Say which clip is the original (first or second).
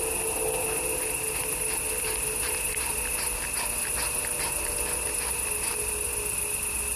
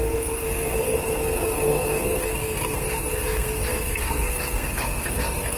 first